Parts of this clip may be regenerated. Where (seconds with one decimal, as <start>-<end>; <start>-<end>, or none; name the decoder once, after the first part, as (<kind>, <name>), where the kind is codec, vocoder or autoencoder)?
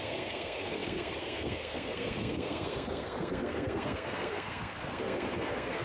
0.0-5.8 (codec, SNAC)